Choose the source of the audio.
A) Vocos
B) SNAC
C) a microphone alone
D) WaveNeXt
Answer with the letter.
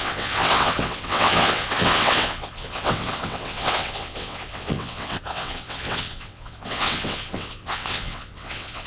D